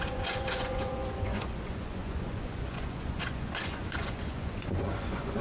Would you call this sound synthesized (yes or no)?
yes